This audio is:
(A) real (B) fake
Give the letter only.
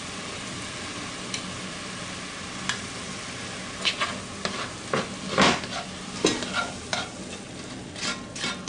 A